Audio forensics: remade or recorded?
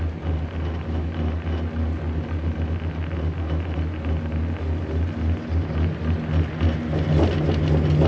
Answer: recorded